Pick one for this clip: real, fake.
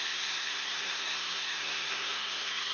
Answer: fake